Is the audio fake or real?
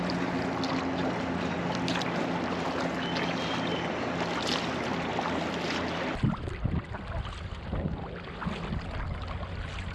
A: real